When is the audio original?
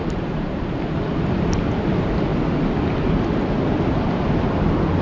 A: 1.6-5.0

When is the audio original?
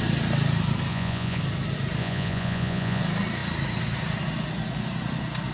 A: 0.0-0.9; 1.4-2.0; 3.0-5.5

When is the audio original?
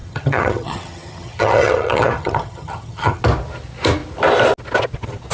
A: 3.2-5.3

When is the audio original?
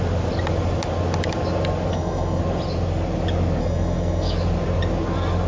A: 0.0-1.9; 2.4-3.6; 4.3-5.5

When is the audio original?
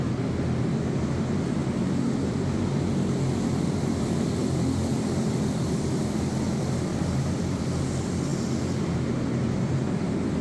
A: 0.0-1.6; 5.7-6.9; 7.6-10.4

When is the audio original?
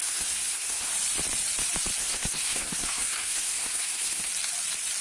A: 0.9-2.0; 4.3-5.0